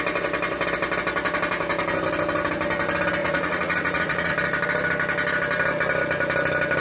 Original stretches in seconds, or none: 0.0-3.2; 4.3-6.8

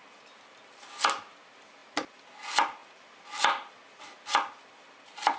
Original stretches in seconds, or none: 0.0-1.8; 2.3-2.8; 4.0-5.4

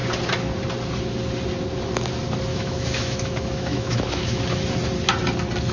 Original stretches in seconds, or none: 0.0-2.5; 4.4-5.7

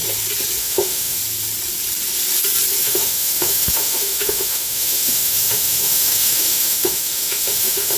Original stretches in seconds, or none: 0.0-0.6; 1.2-2.8

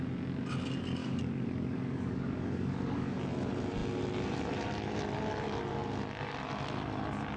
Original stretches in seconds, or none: 0.0-1.0; 3.2-7.4

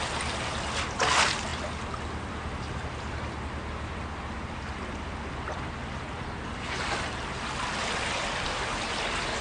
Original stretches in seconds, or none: 0.0-9.4